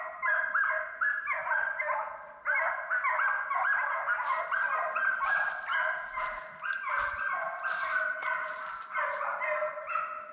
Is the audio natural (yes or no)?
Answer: yes